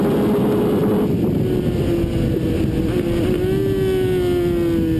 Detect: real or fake real